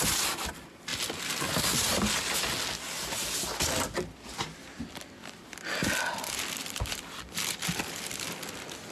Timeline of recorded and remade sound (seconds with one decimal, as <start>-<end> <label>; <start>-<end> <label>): 0.0-0.9 remade; 0.9-4.4 recorded; 4.4-5.8 remade; 5.8-6.6 recorded; 6.6-8.9 remade